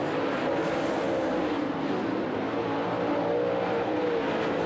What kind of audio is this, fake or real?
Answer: real